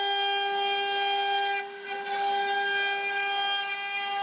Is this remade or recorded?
recorded